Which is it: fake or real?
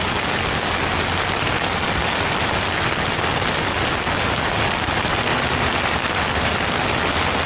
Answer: real